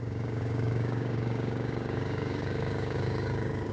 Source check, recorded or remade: remade